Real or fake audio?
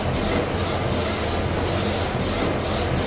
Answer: real